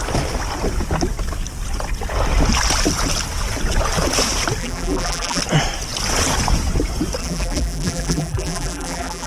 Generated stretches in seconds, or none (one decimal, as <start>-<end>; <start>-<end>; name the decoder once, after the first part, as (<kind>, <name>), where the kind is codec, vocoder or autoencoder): 4.6-5.4 (vocoder, BigVGAN v2); 7.2-9.3